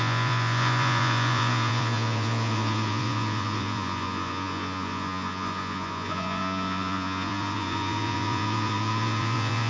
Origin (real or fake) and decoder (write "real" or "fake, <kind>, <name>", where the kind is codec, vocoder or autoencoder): fake, vocoder, Vocos